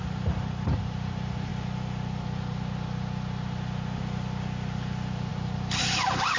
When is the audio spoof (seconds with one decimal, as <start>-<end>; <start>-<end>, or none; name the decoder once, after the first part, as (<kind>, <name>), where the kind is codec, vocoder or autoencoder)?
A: 0.0-1.5 (vocoder, BigVGAN v2); 5.3-6.4